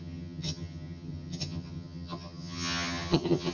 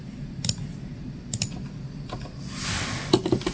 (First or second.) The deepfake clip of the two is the first